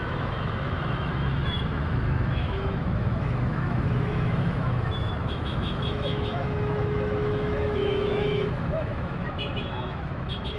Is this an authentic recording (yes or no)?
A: no